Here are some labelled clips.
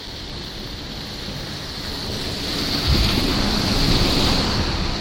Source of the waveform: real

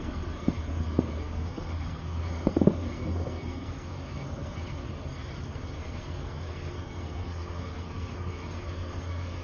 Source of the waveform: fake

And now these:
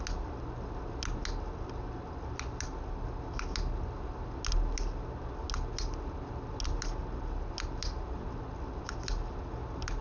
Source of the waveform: real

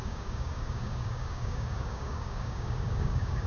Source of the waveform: fake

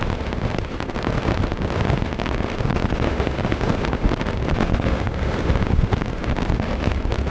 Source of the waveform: fake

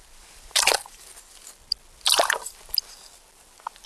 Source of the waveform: real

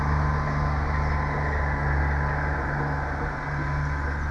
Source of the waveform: real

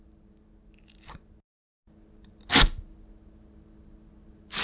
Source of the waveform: real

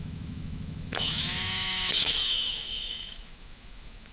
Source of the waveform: fake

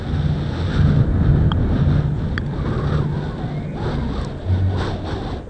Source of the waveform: real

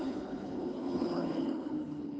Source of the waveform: fake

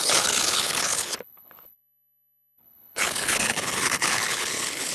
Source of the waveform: fake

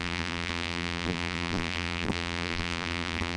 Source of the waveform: fake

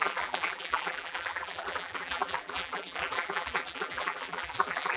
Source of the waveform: fake